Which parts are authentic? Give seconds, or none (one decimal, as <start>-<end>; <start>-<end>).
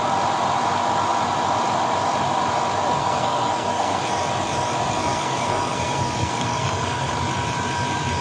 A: 0.0-3.0; 4.0-5.0; 7.1-8.2